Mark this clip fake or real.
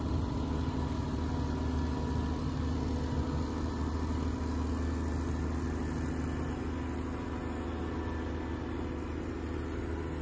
real